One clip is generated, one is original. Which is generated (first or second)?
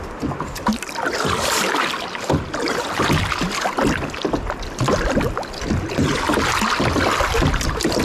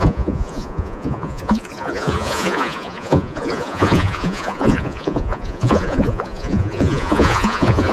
second